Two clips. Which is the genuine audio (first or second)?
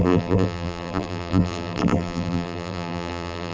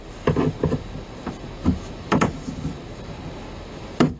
second